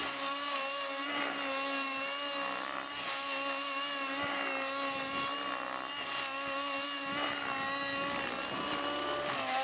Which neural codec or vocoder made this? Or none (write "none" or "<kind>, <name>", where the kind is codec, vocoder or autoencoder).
none